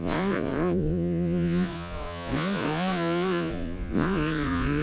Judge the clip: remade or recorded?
remade